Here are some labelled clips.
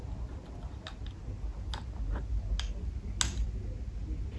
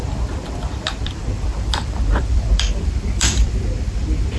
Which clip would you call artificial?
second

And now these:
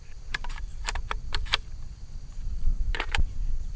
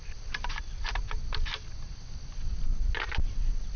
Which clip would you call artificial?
first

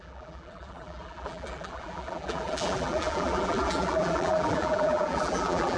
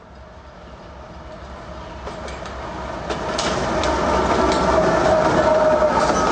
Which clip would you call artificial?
first